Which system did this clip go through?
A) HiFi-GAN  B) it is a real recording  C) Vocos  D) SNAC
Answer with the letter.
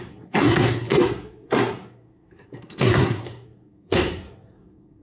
D